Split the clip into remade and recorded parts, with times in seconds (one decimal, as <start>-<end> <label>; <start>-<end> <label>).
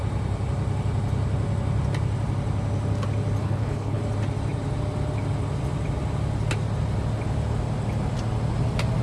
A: 0.0-3.4 recorded; 3.4-4.0 remade; 4.0-9.0 recorded